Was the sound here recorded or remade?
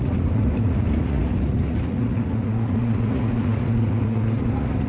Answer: remade